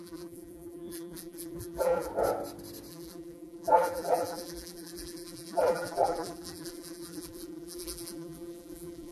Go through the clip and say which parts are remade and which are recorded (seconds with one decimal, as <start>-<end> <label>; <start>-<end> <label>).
0.0-2.1 remade; 2.1-2.9 recorded; 2.9-9.1 remade